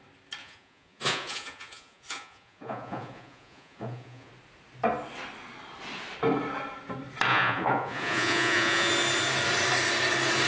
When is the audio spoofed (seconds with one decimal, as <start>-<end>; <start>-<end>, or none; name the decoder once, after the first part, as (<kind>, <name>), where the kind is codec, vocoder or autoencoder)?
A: 0.4-4.3 (vocoder, Vocos); 7.3-8.9